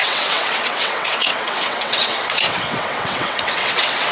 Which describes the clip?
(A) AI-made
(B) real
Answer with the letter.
A